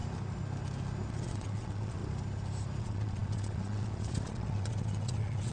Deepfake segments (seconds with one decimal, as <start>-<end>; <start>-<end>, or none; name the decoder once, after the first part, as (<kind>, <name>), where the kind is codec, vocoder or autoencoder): 1.1-2.0 (vocoder, WaveNeXt); 2.8-5.5